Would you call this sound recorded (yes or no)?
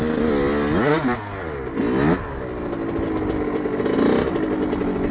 yes